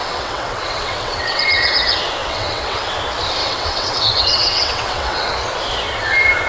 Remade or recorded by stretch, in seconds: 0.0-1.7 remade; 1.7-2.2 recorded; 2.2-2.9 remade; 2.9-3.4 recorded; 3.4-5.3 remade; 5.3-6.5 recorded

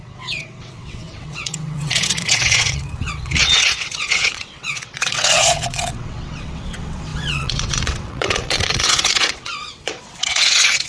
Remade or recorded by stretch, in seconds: 0.0-10.9 remade

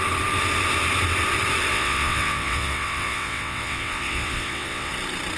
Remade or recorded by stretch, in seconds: 0.0-1.7 recorded; 1.7-4.9 remade; 4.9-5.4 recorded

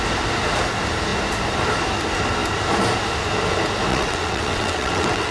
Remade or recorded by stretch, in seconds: 0.0-3.9 recorded; 3.9-5.3 remade

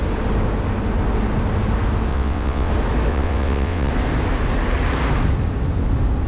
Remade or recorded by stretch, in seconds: 0.0-2.1 recorded; 2.1-2.7 remade; 2.7-3.1 recorded; 3.1-3.9 remade; 3.9-6.3 recorded